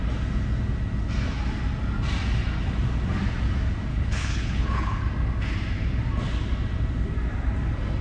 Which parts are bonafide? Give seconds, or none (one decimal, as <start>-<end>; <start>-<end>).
0.0-3.9; 5.0-8.0